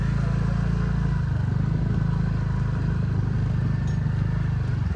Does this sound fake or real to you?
real